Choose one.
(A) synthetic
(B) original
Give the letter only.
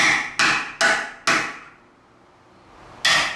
B